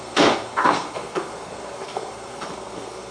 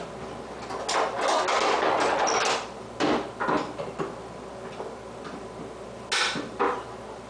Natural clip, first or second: second